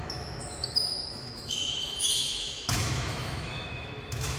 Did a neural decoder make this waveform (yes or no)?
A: yes